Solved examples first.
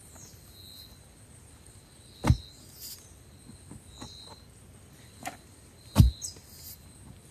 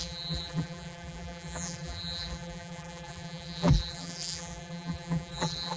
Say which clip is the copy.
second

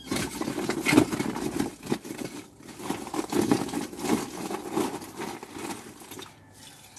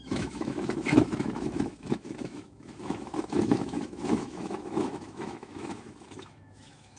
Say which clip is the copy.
second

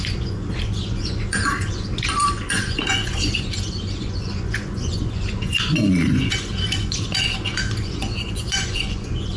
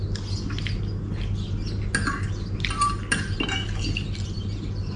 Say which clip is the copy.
first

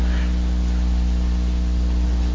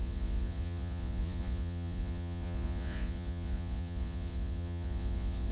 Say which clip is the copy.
second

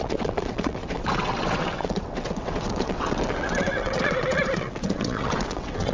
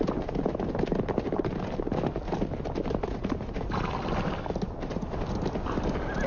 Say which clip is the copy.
first